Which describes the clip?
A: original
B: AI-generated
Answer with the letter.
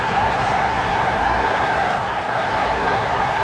B